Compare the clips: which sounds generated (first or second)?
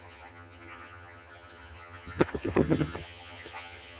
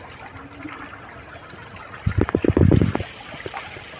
first